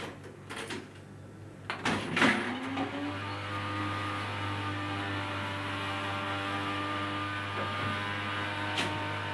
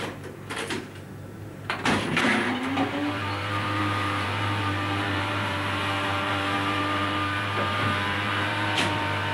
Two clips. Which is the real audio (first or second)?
first